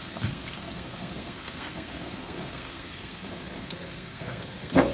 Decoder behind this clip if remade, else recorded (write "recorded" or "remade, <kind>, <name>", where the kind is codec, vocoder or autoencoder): remade, codec, SNAC